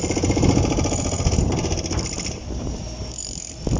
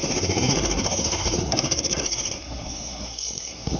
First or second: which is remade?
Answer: second